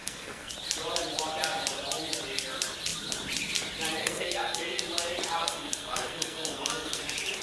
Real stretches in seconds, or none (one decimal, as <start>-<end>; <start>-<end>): 0.5-4.0; 4.8-5.4; 7.0-7.4